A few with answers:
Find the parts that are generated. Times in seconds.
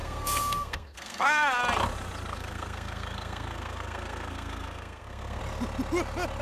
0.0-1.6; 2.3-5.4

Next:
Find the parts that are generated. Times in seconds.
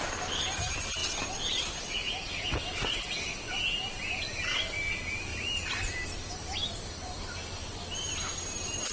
5.3-6.3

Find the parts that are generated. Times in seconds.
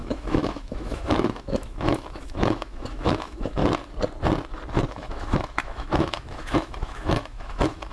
0.0-3.6; 4.9-7.9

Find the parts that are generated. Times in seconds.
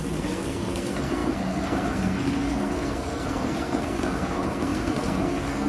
0.0-5.7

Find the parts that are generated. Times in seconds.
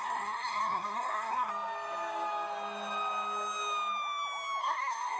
0.0-1.5; 4.6-5.2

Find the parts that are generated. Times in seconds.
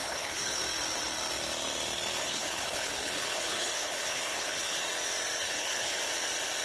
0.0-0.6; 2.2-4.8; 5.4-6.1